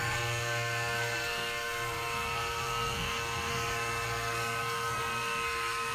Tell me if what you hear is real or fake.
fake